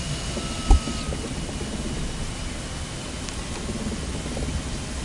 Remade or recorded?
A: recorded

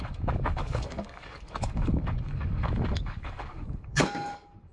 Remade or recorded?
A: remade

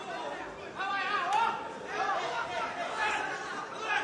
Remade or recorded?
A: recorded